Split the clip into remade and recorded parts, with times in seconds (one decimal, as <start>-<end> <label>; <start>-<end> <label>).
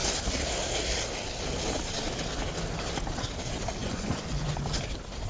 0.0-3.8 recorded; 3.8-4.5 remade; 4.5-5.3 recorded